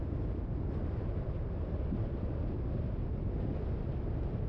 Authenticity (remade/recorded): recorded